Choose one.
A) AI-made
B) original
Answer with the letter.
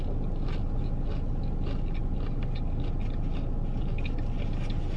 B